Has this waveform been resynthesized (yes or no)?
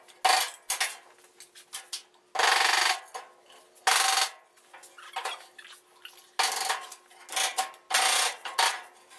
no